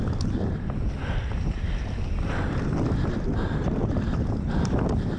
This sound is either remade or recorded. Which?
remade